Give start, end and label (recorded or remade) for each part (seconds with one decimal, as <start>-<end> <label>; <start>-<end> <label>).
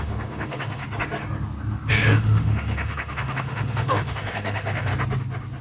0.0-0.8 remade; 0.8-1.9 recorded; 1.9-4.9 remade; 4.9-5.6 recorded